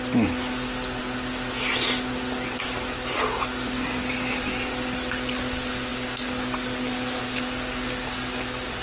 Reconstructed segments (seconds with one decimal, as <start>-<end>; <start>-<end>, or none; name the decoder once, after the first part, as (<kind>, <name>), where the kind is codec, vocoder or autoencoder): none